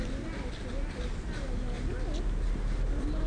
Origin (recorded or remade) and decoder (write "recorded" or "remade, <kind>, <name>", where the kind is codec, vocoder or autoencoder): recorded